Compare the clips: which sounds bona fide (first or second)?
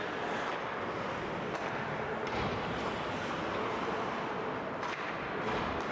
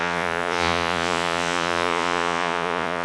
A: first